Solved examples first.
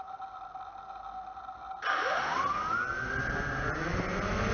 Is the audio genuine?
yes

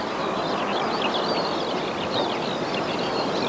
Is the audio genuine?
yes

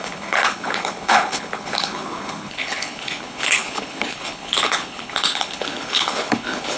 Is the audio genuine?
no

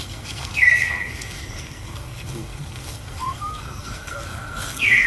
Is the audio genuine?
no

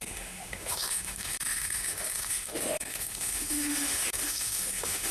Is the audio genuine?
no